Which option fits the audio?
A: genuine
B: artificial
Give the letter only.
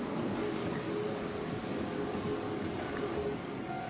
B